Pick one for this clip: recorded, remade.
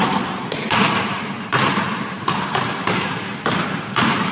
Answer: remade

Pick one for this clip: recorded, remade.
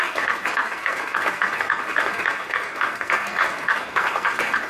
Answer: remade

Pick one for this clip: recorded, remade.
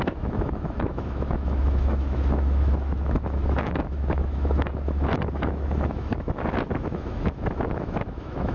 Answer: remade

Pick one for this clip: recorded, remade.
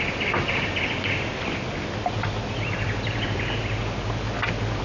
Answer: recorded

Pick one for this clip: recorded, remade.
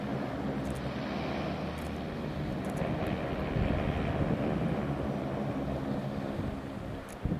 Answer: recorded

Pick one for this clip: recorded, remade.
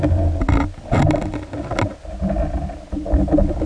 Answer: recorded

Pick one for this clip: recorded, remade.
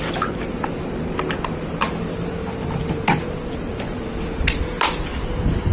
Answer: recorded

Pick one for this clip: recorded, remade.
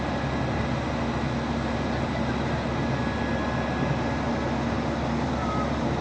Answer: recorded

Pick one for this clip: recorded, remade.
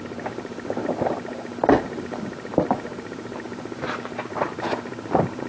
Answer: recorded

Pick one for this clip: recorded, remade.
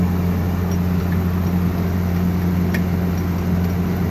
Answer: recorded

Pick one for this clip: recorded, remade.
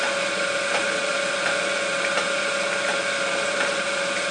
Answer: recorded